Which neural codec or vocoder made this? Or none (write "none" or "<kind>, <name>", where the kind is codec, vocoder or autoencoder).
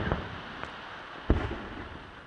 vocoder, BigVGAN v2